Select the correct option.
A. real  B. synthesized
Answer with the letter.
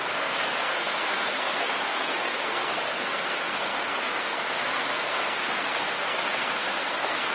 B